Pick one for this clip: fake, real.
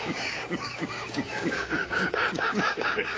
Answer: fake